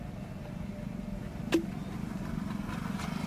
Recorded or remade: recorded